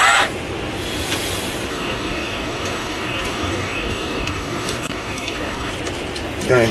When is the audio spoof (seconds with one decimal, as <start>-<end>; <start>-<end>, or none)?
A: 1.7-5.7